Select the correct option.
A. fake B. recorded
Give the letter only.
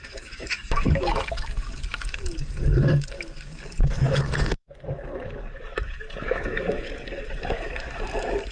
A